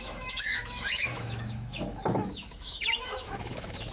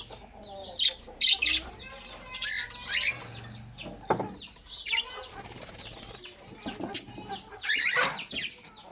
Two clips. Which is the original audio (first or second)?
second